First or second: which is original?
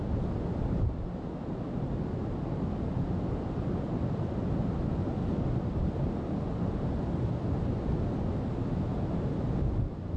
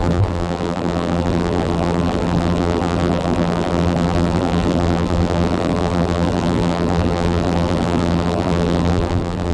first